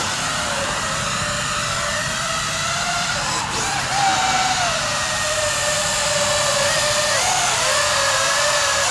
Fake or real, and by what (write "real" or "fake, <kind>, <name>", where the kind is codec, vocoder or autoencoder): fake, vocoder, BigVGAN v2